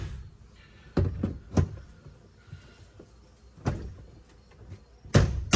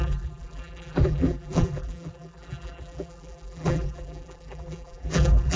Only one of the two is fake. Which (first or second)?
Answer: second